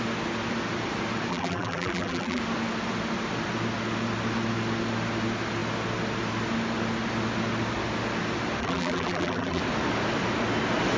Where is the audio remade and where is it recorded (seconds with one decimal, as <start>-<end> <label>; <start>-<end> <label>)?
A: 0.0-1.3 recorded; 1.3-2.4 remade; 2.4-8.6 recorded; 8.6-9.6 remade; 9.6-11.0 recorded